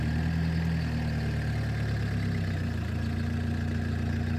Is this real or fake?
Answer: real